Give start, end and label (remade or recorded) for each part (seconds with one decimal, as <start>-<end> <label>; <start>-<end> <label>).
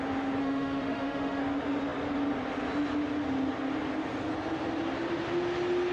0.0-0.4 recorded; 0.4-1.4 remade; 1.4-5.9 recorded